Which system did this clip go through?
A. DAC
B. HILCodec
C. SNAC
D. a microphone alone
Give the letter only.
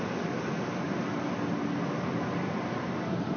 D